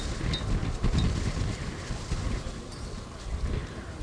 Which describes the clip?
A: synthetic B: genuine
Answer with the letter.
B